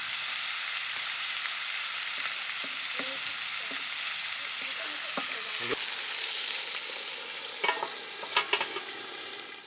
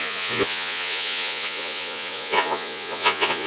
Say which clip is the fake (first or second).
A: second